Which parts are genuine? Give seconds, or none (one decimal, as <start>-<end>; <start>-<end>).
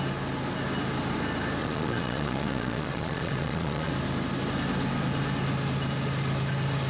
0.0-1.6; 3.9-6.9